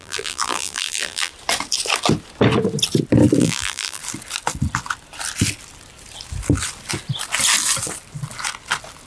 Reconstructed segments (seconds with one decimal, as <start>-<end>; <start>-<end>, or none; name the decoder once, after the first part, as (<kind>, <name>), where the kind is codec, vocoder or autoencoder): 0.0-1.3 (vocoder, BigVGAN v2); 3.4-4.0

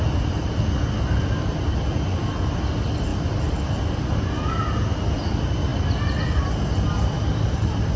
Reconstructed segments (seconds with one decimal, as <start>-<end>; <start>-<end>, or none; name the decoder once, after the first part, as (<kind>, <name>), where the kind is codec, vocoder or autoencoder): 5.7-6.4 (vocoder, BigVGAN v2)

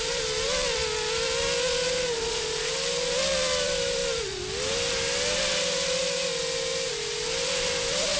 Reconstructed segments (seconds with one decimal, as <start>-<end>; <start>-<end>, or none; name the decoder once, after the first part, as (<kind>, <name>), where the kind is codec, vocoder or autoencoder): 0.0-0.8 (vocoder, BigVGAN v2); 3.3-4.0; 6.9-8.2

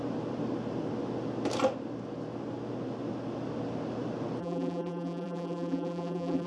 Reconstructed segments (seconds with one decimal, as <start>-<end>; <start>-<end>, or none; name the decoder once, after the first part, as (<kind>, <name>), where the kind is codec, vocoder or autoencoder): 4.4-6.5 (vocoder, BigVGAN v2)

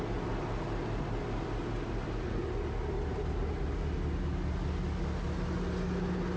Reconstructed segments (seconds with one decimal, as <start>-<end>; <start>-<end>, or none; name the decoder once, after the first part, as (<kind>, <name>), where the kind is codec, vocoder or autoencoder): 3.1-3.7 (vocoder, BigVGAN v2)

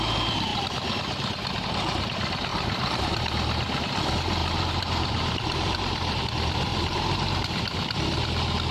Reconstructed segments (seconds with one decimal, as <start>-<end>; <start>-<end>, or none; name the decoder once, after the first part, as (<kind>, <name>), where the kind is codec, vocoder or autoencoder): 2.5-3.1 (vocoder, BigVGAN v2); 4.4-6.2; 6.7-7.3

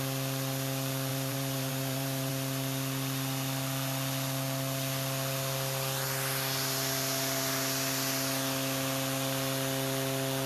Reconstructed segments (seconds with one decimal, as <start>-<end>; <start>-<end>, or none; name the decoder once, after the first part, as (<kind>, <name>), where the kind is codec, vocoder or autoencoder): 1.1-2.3 (vocoder, BigVGAN v2)

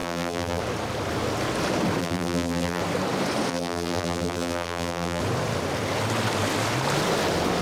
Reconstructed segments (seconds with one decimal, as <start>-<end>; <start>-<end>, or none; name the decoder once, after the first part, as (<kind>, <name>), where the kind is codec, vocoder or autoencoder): 0.0-0.6 (vocoder, BigVGAN v2); 2.0-2.8; 3.5-5.2